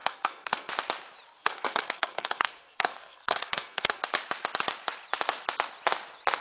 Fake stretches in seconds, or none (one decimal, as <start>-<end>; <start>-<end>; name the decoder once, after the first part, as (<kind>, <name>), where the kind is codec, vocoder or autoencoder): 0.0-0.7 (codec, SNAC); 1.3-4.0